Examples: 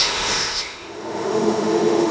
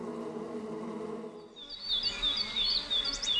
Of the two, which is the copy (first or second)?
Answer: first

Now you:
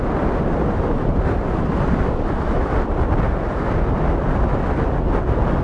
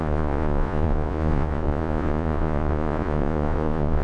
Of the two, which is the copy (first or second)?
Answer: second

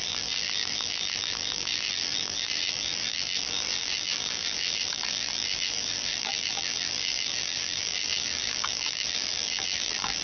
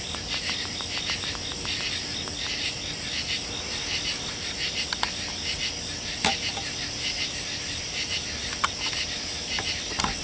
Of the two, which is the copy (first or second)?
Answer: first